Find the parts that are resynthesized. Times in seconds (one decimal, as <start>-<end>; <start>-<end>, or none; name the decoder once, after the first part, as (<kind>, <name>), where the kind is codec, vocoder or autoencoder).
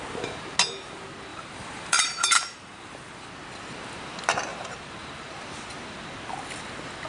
1.3-3.3 (vocoder, BigVGAN v2); 4.5-5.3